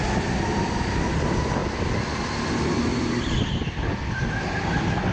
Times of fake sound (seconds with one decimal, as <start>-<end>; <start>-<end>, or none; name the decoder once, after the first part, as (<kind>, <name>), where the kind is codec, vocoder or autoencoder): none